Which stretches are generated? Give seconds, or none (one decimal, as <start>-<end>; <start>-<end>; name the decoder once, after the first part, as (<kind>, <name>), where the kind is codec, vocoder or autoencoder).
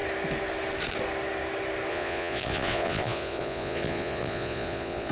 1.9-5.1 (vocoder, Vocos)